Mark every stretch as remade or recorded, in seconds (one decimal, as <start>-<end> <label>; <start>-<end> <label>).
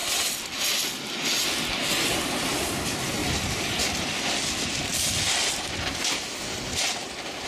0.0-0.6 remade; 0.6-3.2 recorded; 3.2-6.0 remade; 6.0-7.5 recorded